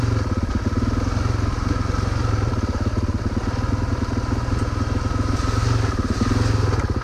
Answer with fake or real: real